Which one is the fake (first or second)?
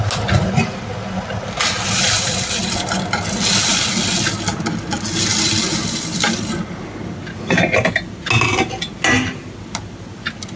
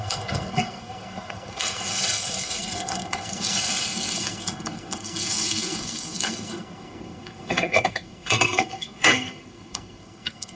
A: second